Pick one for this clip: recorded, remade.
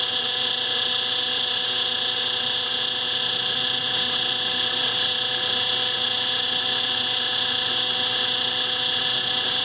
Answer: recorded